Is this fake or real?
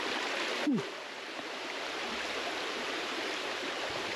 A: real